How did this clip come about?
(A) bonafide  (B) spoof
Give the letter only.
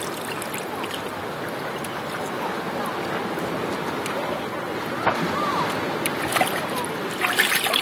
A